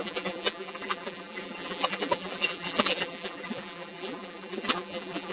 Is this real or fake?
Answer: fake